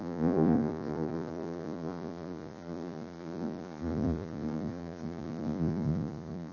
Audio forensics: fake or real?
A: fake